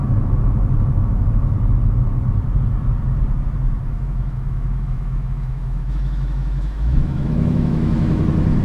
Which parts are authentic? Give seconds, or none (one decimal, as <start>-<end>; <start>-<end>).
0.0-3.9; 8.2-8.6